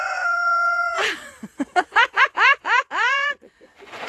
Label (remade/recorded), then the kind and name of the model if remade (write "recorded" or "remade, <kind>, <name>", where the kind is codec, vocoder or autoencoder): remade, vocoder, Vocos